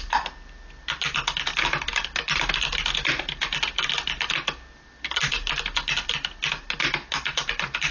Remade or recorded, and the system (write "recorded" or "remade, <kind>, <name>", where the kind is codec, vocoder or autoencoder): recorded